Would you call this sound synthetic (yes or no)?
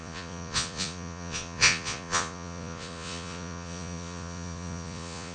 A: yes